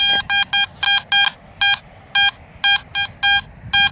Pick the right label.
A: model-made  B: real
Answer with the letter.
B